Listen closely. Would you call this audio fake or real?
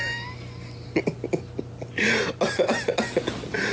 real